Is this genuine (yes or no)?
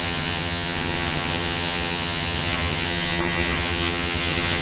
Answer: no